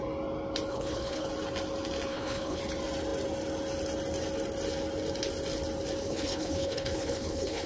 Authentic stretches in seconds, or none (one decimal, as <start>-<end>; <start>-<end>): 0.0-0.7; 1.3-2.1; 2.6-6.0